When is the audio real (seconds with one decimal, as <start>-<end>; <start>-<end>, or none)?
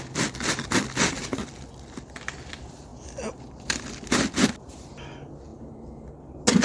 0.0-6.6